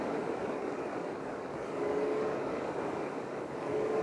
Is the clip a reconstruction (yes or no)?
yes